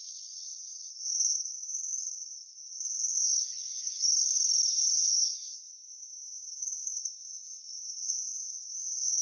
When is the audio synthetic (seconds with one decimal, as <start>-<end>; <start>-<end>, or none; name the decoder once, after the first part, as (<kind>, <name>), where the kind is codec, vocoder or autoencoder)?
0.0-9.2 (codec, DAC)